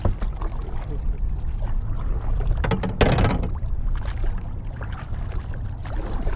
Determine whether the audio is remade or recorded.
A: recorded